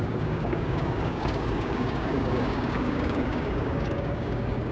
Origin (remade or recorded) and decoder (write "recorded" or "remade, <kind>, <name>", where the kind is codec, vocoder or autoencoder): remade, codec, DAC